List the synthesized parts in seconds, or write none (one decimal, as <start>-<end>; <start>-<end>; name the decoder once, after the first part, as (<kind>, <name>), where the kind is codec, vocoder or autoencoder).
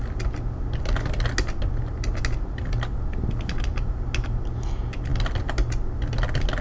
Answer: none